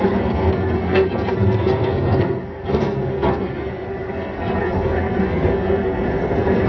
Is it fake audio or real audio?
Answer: fake